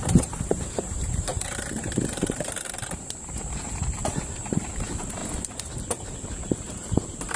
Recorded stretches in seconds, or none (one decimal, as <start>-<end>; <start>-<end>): 5.2-6.7